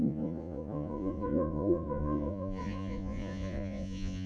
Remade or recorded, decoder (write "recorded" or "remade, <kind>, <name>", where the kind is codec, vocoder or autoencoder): remade, vocoder, Vocos